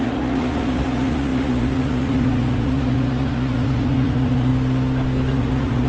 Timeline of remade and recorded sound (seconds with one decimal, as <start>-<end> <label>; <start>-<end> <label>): 0.0-4.5 remade; 4.5-5.3 recorded; 5.3-5.9 remade